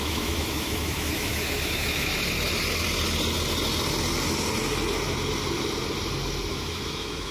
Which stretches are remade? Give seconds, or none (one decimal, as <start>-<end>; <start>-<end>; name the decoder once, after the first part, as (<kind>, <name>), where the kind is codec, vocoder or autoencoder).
0.0-2.1 (autoencoder, DAC-VAE); 6.5-7.3